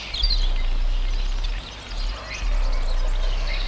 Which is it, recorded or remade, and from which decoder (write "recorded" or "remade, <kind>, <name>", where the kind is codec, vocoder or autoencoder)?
recorded